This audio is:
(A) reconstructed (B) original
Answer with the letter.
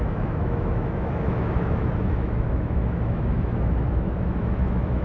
A